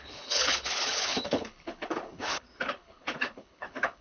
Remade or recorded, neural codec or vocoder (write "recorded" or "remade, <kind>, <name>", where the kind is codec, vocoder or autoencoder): remade, codec, HILCodec